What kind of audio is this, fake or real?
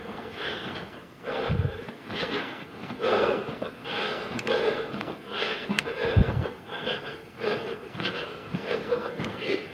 fake